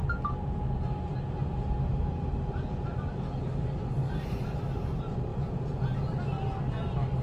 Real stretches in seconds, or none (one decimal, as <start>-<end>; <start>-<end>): 0.0-7.2